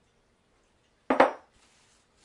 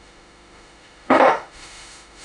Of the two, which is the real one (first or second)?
first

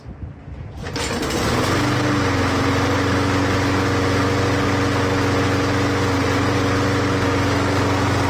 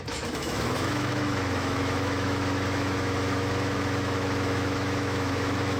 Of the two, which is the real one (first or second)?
first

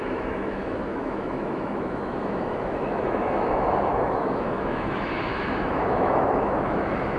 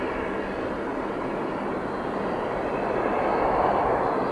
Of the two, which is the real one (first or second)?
second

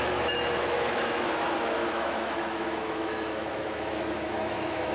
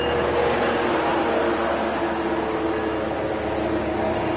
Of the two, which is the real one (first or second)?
second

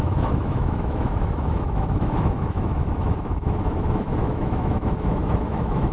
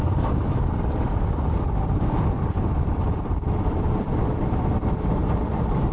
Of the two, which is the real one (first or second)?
second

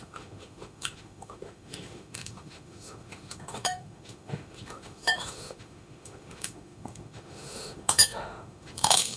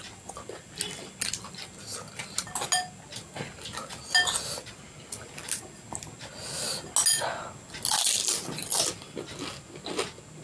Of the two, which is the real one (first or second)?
second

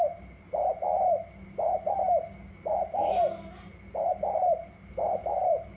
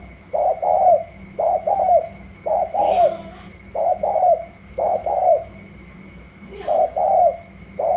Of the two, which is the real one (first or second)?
first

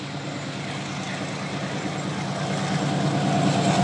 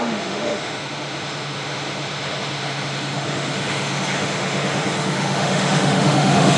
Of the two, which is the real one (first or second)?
first